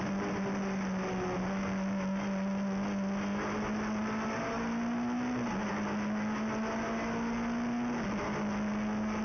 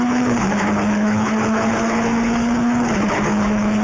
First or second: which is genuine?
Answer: first